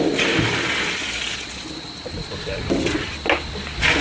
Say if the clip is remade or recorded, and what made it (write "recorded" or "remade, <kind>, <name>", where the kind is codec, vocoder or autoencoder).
recorded